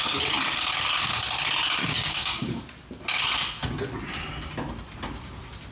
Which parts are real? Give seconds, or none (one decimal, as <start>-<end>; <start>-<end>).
0.0-1.8; 2.6-5.7